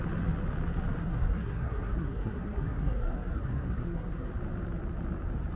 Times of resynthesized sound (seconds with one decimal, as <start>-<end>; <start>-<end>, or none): 1.0-4.3